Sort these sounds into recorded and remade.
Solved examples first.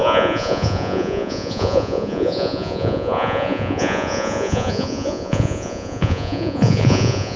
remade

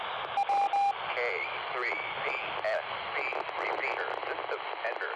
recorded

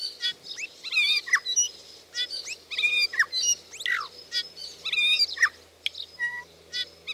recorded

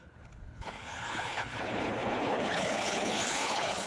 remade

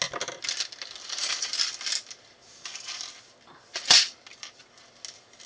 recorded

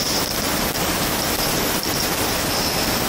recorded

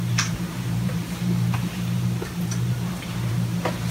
remade